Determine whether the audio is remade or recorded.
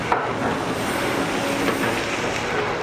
recorded